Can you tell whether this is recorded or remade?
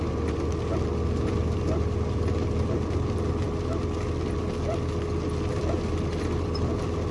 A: recorded